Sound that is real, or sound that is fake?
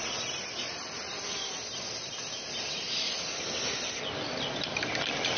real